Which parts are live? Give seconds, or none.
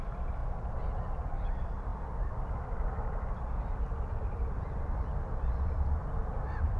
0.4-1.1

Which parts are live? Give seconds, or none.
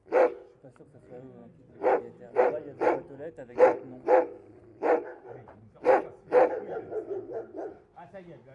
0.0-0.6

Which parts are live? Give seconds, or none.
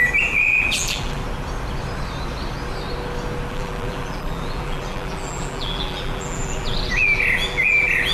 1.2-3.5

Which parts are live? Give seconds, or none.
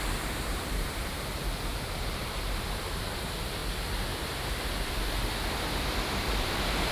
3.6-6.1